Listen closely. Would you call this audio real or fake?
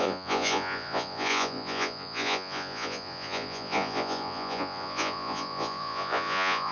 fake